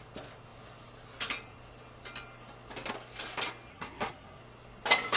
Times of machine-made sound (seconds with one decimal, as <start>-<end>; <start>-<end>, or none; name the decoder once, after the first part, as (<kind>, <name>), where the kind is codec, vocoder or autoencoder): 3.7-4.4 (codec, SNAC)